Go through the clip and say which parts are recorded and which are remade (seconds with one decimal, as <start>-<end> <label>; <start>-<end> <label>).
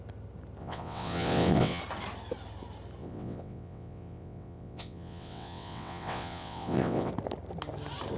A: 0.0-0.6 recorded; 0.6-1.8 remade; 1.8-3.0 recorded; 3.0-7.1 remade; 7.1-8.2 recorded